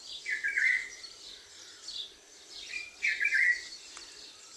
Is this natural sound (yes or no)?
yes